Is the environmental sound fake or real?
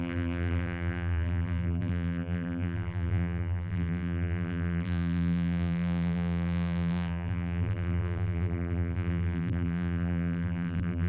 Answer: fake